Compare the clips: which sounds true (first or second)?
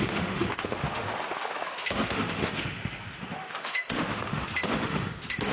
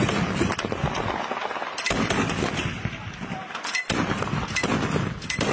second